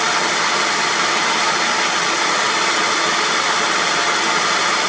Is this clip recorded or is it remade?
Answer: recorded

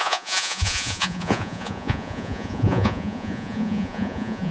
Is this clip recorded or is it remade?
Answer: remade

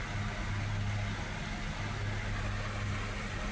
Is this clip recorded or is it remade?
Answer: recorded